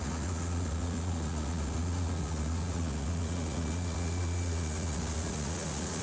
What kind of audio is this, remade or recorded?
remade